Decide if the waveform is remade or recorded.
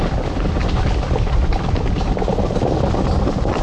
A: recorded